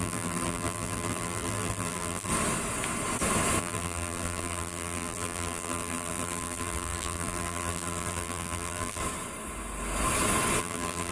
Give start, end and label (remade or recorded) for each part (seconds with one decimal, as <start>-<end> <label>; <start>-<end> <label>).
0.0-2.3 remade; 2.3-3.6 recorded; 3.6-9.0 remade; 9.0-10.6 recorded; 10.6-11.1 remade